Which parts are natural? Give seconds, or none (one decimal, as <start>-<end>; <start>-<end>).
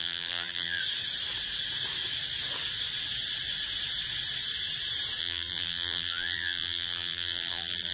0.8-5.2